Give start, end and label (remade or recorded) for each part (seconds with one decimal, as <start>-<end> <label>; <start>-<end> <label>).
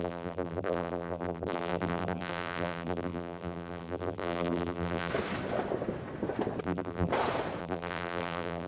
0.0-5.1 remade; 5.1-6.6 recorded; 6.6-7.1 remade; 7.1-7.6 recorded; 7.6-8.7 remade